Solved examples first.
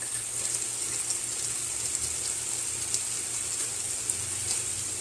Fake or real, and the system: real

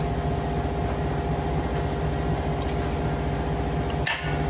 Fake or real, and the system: real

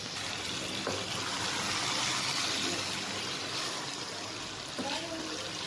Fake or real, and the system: real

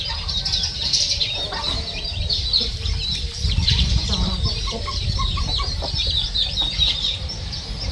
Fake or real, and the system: real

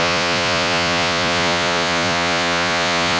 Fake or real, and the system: fake, vocoder, Vocos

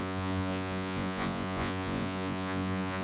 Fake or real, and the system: fake, vocoder, Vocos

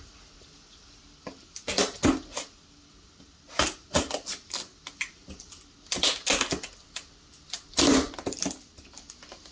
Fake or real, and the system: real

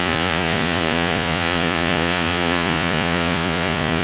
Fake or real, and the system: fake, vocoder, Vocos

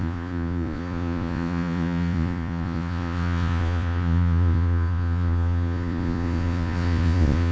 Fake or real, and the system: fake, vocoder, Vocos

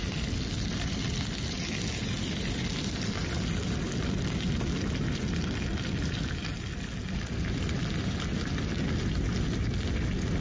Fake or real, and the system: real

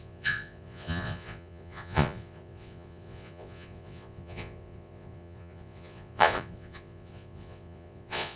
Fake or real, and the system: fake, vocoder, Vocos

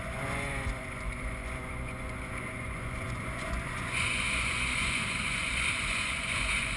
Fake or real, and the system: fake, vocoder, Vocos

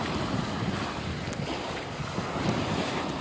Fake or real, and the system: real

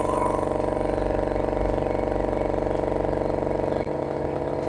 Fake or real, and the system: real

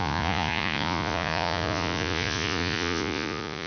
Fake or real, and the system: fake, vocoder, Vocos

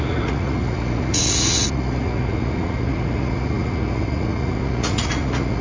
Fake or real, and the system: fake, vocoder, Vocos